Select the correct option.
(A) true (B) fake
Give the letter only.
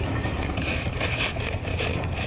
A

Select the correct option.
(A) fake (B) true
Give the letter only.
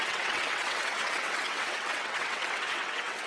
A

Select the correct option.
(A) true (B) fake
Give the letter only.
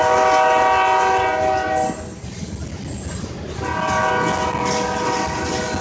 A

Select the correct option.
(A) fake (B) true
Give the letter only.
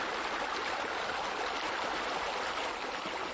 B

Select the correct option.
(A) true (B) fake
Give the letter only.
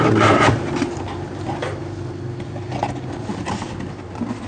A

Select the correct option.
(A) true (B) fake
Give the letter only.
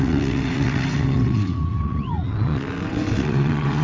B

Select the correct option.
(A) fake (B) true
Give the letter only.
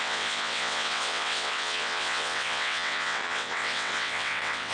A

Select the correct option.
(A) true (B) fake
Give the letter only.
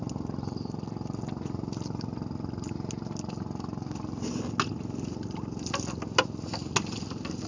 A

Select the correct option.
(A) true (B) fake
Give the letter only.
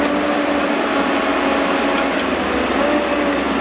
A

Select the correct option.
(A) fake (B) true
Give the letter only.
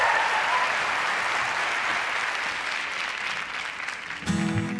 B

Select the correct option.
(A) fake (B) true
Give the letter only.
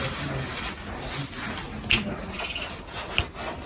B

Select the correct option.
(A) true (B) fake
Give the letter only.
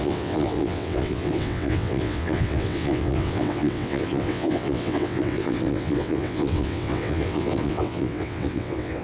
B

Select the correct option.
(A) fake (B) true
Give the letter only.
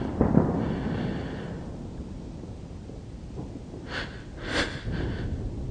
B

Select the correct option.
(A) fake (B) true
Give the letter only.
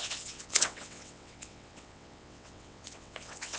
A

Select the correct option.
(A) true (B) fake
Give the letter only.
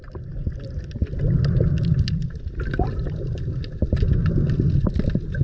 A